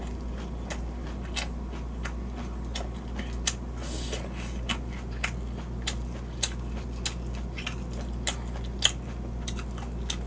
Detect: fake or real real